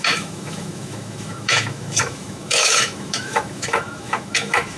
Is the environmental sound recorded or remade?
remade